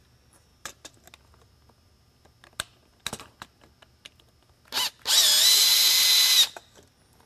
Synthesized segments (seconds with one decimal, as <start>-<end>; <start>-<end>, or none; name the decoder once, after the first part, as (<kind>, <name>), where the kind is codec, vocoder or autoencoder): none